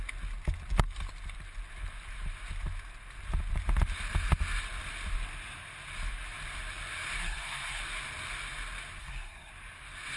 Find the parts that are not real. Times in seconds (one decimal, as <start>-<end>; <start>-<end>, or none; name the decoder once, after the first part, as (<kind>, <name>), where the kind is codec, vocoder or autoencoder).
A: 7.2-7.8 (codec, SNAC); 9.0-9.5